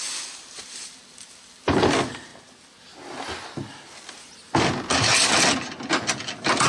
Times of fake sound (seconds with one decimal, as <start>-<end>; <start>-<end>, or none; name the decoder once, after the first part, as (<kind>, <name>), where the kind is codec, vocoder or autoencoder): none